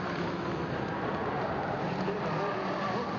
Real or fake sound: real